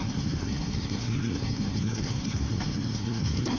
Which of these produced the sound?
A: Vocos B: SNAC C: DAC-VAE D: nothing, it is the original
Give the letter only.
B